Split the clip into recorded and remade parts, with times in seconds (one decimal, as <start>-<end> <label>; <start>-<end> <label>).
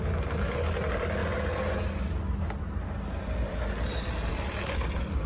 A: 0.0-5.3 recorded